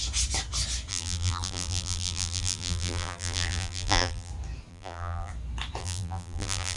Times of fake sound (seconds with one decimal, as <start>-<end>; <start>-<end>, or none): 0.9-4.3; 4.7-5.3; 5.8-6.8